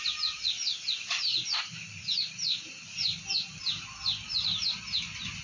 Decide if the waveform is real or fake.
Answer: real